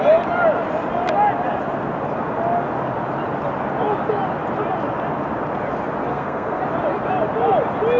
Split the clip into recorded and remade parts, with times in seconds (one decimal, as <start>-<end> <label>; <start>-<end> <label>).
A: 0.0-6.1 recorded; 6.1-6.6 remade; 6.6-8.0 recorded

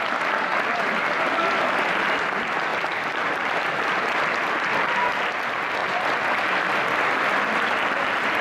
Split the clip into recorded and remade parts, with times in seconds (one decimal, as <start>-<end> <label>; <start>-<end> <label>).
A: 0.0-0.5 recorded; 0.5-1.0 remade; 1.0-2.7 recorded; 2.7-4.0 remade; 4.0-5.8 recorded; 5.8-7.7 remade; 7.7-8.4 recorded

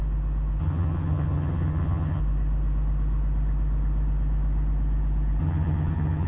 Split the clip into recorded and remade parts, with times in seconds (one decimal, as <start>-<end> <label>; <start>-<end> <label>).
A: 0.0-0.6 recorded; 0.6-2.2 remade; 2.2-5.4 recorded; 5.4-6.3 remade

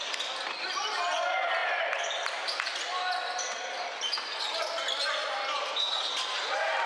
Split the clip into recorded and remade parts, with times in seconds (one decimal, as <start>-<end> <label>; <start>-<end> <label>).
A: 0.0-6.9 recorded

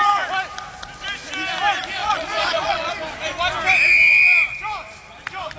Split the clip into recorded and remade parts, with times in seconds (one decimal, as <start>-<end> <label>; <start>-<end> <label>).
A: 0.0-2.0 recorded; 2.0-2.9 remade; 2.9-5.6 recorded

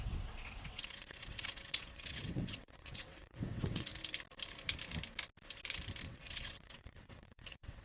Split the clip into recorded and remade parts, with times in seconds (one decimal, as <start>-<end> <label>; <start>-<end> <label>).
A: 0.0-3.9 remade; 3.9-6.0 recorded; 6.0-7.8 remade